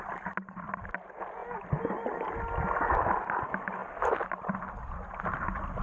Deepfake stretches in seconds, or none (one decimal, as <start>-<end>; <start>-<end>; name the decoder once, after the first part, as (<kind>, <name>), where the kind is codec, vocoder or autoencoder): none